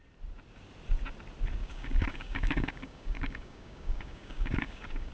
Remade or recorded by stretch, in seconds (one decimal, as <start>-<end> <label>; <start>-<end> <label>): 0.0-1.6 recorded; 1.6-5.1 remade